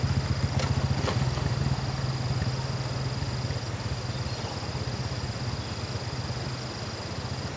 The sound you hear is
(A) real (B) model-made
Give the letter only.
A